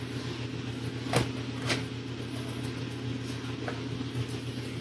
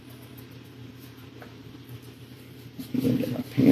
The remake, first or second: second